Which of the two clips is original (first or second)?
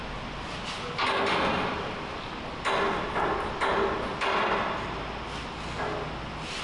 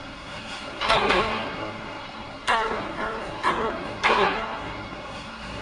first